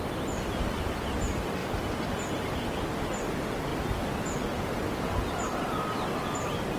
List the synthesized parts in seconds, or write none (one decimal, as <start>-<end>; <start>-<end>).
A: none